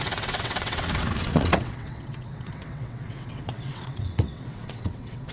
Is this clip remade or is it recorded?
remade